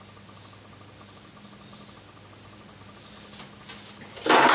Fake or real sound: real